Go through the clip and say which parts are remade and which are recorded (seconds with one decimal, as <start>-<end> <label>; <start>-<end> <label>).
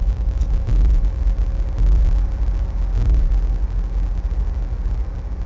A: 0.0-0.7 recorded; 0.7-1.2 remade; 1.2-5.5 recorded